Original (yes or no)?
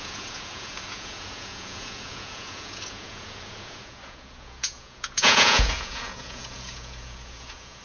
no